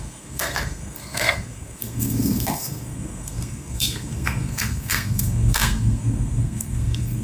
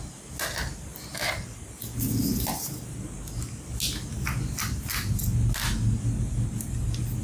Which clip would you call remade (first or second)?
first